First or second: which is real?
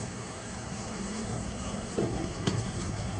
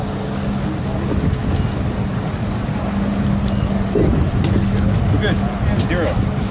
second